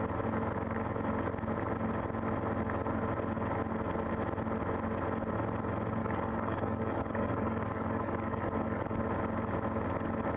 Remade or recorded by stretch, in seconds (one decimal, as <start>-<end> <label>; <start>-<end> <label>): 0.0-6.0 recorded; 6.0-9.0 remade; 9.0-10.4 recorded

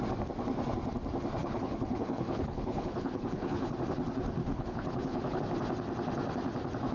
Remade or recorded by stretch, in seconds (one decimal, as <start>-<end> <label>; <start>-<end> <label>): 0.0-1.4 recorded; 1.4-3.7 remade; 3.7-4.4 recorded; 4.4-5.4 remade; 5.4-6.9 recorded